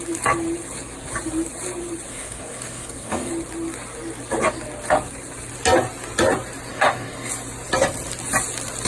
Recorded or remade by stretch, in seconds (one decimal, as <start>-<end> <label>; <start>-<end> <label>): 0.0-2.1 recorded; 2.1-3.3 remade; 3.3-6.7 recorded; 6.7-7.3 remade; 7.3-8.9 recorded